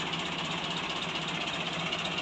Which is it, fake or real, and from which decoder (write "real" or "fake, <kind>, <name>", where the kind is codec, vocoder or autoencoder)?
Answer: real